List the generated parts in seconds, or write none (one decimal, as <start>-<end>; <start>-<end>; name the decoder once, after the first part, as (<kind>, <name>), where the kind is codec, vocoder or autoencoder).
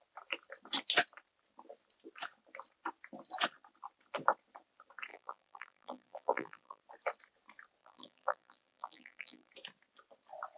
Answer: 5.1-6.8 (vocoder, BigVGAN v2); 7.8-9.5